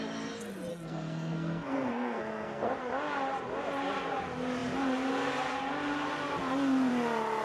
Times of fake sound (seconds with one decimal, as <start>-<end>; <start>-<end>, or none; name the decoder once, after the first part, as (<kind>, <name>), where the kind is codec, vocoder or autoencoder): 0.7-2.8 (codec, SNAC)